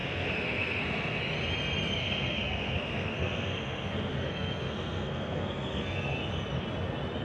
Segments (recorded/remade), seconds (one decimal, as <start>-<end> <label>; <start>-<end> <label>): 0.0-1.2 remade; 1.2-2.0 recorded; 2.0-6.3 remade; 6.3-7.2 recorded

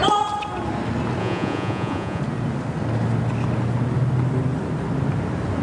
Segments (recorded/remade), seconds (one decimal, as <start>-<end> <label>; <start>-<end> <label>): 0.0-1.2 recorded; 1.2-2.2 remade; 2.2-5.6 recorded

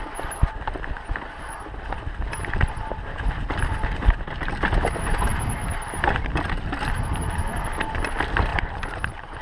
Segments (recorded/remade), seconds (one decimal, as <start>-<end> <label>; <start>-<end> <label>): 0.0-8.5 recorded; 8.5-9.4 remade

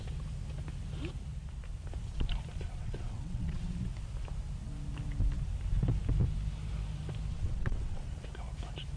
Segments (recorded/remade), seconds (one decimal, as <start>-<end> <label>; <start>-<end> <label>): 0.0-2.8 recorded; 2.8-3.6 remade; 3.6-7.3 recorded; 7.3-8.0 remade; 8.0-9.0 recorded

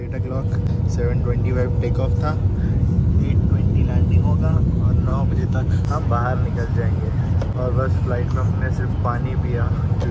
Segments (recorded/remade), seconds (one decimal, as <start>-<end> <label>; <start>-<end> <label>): 0.0-5.1 recorded; 5.1-6.1 remade; 6.1-10.1 recorded

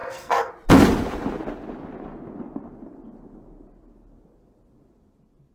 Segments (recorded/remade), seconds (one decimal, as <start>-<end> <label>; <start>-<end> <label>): 0.0-0.5 remade; 0.5-5.5 recorded